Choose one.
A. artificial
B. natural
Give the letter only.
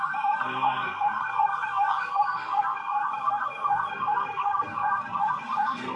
A